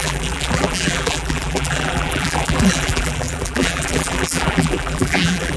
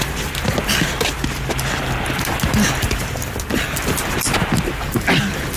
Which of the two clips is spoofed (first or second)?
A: first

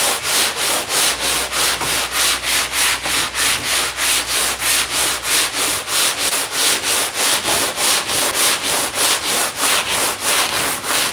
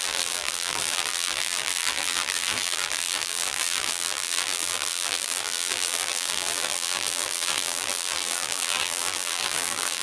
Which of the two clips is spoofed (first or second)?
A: second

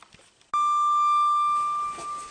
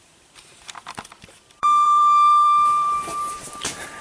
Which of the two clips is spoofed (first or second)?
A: second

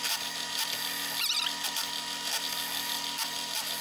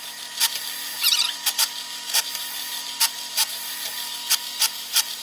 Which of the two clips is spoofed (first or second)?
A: second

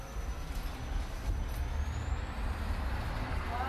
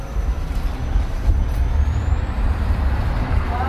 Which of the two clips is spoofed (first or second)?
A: second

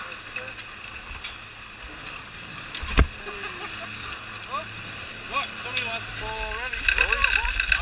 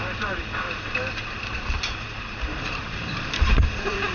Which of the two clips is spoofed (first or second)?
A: second